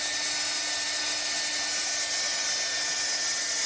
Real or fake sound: real